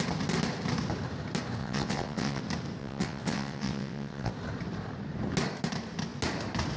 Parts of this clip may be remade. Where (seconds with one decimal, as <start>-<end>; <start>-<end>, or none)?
1.6-2.4; 2.8-4.3